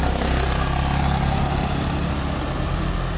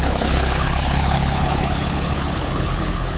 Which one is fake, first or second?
second